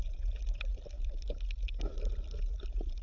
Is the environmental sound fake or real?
real